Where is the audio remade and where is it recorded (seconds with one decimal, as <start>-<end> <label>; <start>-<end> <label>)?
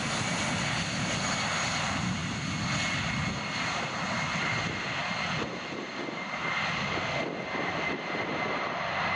0.0-9.2 recorded